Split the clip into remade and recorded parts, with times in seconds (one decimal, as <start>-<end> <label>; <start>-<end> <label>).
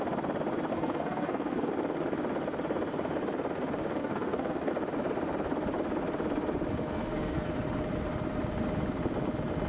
0.0-0.7 recorded; 0.7-1.7 remade; 1.7-4.0 recorded; 4.0-4.7 remade; 4.7-6.7 recorded; 6.7-7.5 remade; 7.5-9.7 recorded